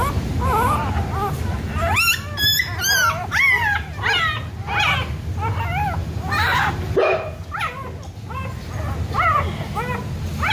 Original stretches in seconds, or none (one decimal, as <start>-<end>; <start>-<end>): 0.0-6.0; 7.3-10.5